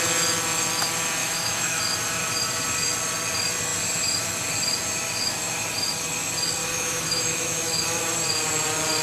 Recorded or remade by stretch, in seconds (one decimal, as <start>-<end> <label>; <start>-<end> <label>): 0.0-1.2 recorded; 1.2-1.8 remade; 1.8-6.6 recorded; 6.6-8.0 remade; 8.0-9.0 recorded